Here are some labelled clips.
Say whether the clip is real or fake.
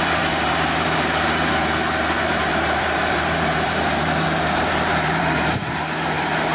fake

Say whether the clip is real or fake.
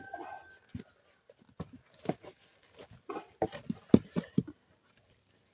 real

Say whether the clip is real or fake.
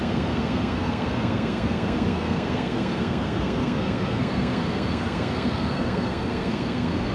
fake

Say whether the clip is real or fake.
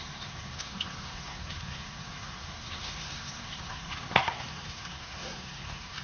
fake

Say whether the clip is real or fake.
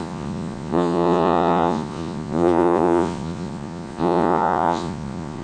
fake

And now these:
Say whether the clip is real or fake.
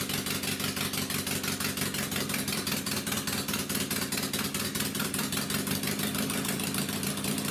real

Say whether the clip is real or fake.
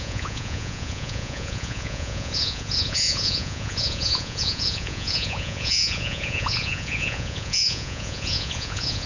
fake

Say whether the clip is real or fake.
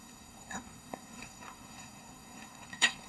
fake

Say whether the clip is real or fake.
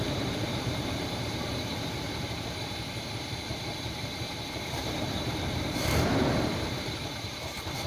fake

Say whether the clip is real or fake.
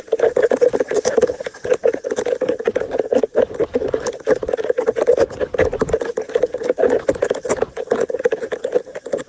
real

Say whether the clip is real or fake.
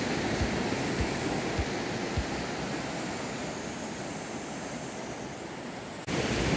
real